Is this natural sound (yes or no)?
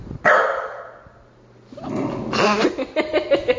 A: yes